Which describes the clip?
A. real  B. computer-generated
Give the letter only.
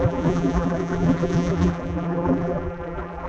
B